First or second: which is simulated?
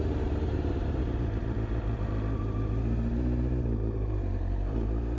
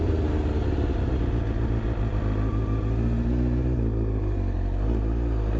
first